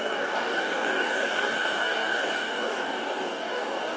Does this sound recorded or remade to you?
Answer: remade